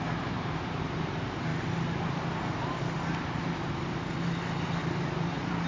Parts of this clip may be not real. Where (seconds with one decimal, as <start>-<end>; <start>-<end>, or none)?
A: 0.0-1.5; 4.8-5.7